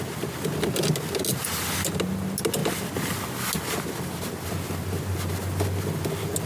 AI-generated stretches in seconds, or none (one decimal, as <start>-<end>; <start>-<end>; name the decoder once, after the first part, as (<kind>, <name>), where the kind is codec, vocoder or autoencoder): none